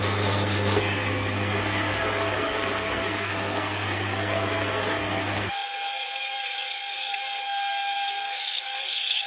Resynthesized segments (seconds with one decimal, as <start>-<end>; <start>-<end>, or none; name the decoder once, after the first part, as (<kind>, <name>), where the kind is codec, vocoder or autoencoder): 0.0-9.3 (codec, SNAC)